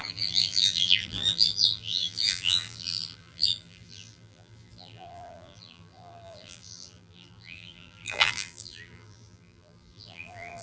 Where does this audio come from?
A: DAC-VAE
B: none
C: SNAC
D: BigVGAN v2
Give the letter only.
D